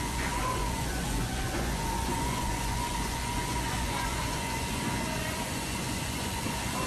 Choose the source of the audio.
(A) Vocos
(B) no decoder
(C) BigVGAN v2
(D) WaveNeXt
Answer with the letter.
A